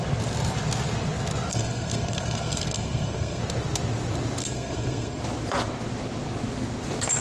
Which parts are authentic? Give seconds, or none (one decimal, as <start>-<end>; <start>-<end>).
0.0-1.5; 3.4-4.4; 5.2-7.2